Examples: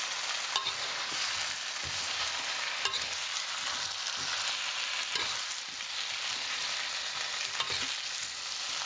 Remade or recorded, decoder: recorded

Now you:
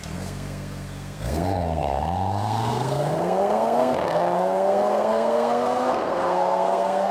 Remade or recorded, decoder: remade, codec, SNAC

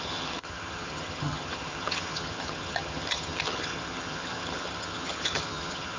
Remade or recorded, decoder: remade, vocoder, HiFi-GAN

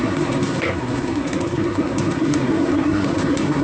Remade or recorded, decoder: remade, codec, SNAC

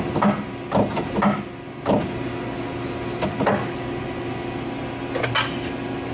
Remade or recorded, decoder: recorded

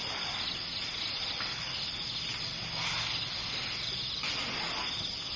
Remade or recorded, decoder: recorded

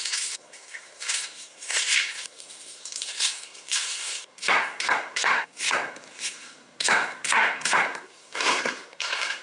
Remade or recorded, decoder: remade, codec, SNAC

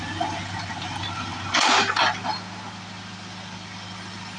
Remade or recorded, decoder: recorded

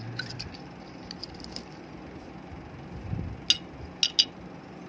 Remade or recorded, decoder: recorded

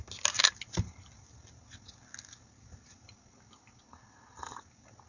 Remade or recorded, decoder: recorded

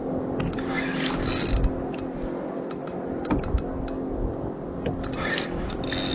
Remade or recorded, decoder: recorded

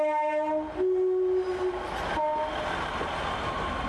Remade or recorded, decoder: recorded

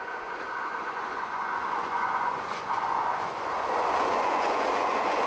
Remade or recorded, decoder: remade, vocoder, Vocos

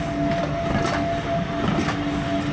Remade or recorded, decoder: recorded